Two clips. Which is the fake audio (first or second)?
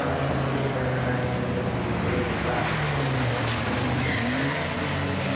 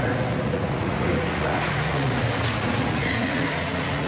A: second